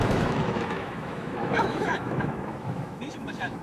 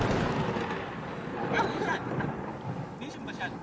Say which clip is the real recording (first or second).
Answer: second